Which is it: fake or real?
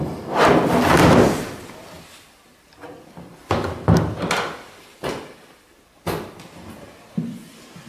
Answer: real